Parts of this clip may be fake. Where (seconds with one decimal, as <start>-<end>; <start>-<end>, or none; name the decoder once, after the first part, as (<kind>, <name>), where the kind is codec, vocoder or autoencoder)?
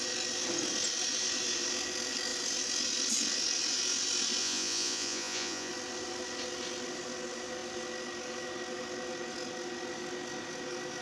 4.4-5.7 (vocoder, Vocos)